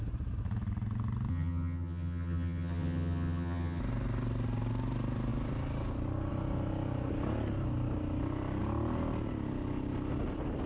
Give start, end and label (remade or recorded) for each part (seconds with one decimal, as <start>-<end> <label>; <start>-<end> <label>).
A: 0.0-1.3 recorded; 1.3-3.8 remade; 3.8-10.7 recorded